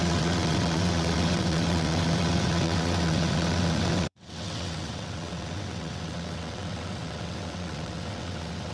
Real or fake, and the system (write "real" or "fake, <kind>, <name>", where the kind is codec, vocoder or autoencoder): fake, vocoder, WaveNeXt